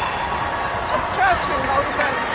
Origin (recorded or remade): recorded